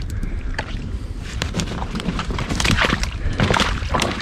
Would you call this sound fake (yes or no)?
yes